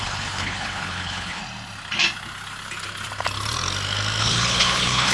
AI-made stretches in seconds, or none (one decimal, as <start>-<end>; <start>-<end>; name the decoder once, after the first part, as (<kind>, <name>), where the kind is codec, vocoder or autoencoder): 0.0-1.4 (codec, HILCodec); 4.2-5.1